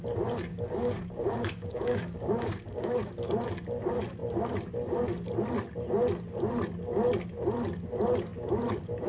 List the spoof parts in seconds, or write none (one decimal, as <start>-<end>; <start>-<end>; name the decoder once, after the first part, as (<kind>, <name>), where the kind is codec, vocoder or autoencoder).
0.5-3.3 (codec, DAC)